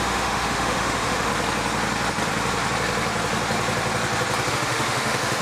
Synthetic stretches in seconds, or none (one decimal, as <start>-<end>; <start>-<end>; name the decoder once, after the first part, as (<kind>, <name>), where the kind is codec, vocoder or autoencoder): 0.0-1.3 (autoencoder, DAC-VAE); 4.5-5.4